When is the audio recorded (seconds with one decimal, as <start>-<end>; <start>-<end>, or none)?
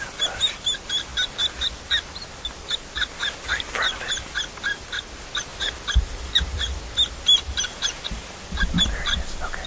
0.0-5.5; 6.8-9.7